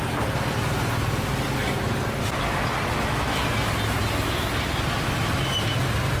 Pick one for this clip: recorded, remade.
recorded